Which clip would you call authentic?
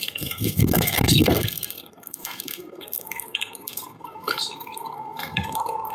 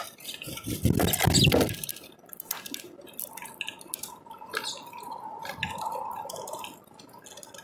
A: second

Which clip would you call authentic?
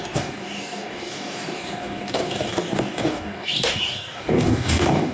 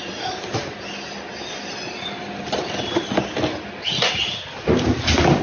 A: second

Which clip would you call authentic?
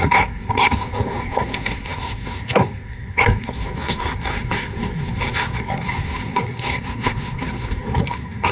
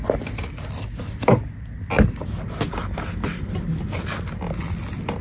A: second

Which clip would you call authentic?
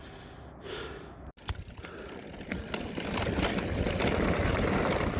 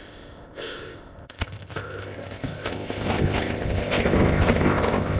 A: first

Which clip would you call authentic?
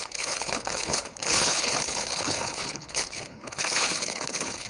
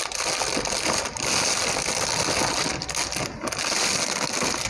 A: second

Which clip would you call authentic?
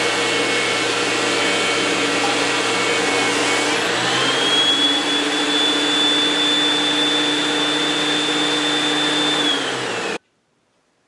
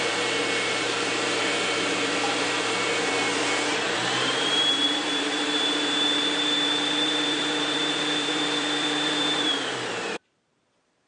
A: first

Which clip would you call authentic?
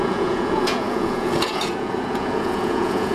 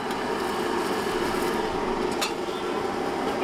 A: second